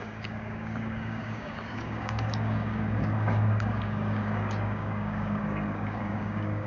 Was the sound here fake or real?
fake